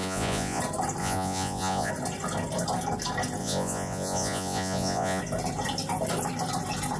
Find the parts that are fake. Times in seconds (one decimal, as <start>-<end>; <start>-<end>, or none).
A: 0.0-0.6; 1.0-1.9; 3.4-5.2